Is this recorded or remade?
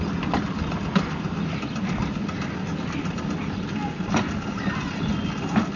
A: recorded